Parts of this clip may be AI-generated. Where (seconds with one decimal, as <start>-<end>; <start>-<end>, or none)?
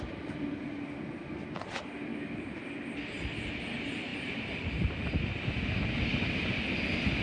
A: 2.1-2.7; 4.1-7.2